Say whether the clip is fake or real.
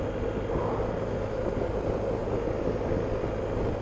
real